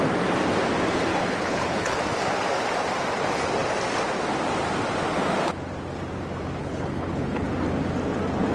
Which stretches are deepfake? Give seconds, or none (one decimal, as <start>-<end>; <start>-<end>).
1.1-2.0; 6.6-7.5